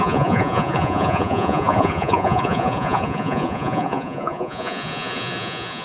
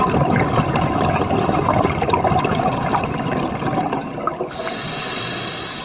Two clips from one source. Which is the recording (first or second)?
second